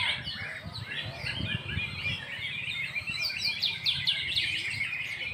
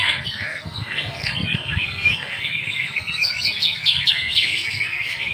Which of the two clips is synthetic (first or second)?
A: second